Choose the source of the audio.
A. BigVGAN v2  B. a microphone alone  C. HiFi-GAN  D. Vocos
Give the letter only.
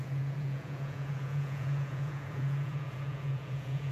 D